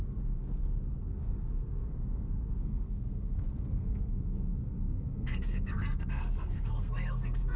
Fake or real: fake